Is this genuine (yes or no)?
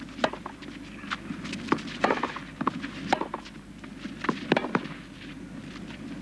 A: yes